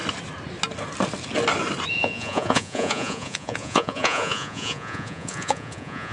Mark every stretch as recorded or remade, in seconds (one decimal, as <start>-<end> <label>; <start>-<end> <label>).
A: 0.0-1.9 recorded; 1.9-6.1 remade